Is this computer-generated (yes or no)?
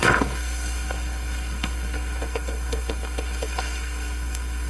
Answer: yes